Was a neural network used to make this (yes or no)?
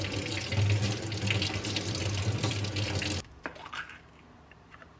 no